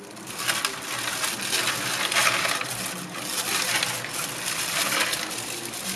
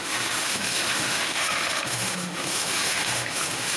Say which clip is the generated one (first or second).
second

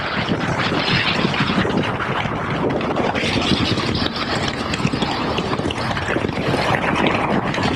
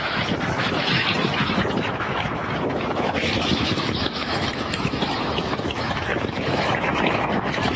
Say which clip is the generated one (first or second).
second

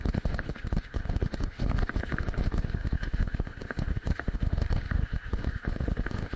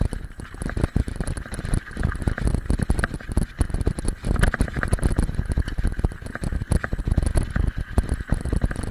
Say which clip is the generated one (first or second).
first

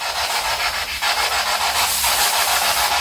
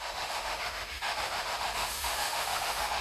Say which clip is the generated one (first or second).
second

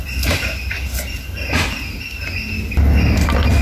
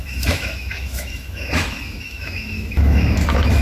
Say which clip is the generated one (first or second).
second